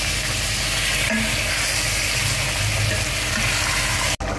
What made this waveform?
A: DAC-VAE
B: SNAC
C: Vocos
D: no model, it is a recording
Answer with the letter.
D